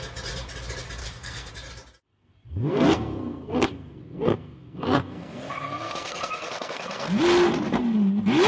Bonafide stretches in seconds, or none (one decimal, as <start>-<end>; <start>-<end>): 0.0-1.0; 1.5-2.1; 7.2-8.5